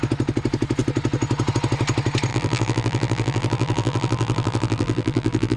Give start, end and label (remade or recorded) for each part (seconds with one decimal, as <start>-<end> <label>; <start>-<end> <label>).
0.0-2.3 recorded; 2.3-5.6 remade